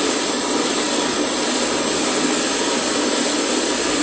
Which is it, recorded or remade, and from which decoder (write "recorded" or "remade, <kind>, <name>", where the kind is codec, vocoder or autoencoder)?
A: recorded